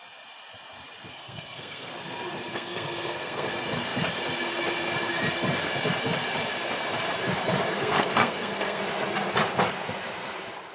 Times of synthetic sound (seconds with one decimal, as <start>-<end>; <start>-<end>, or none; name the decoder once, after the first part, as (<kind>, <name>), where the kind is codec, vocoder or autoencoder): 1.1-1.9 (codec, SNAC); 2.5-3.5; 7.7-8.8